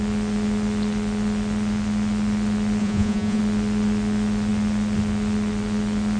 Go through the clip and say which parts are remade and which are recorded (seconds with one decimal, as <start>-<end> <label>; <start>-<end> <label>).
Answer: 0.0-2.8 recorded; 2.8-3.4 remade; 3.4-6.2 recorded